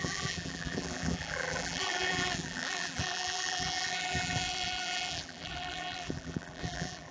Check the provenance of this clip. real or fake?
fake